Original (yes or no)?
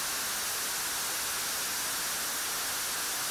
yes